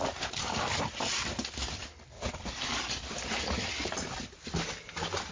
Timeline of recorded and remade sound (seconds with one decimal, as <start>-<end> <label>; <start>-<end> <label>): 0.0-1.8 remade; 1.8-5.3 recorded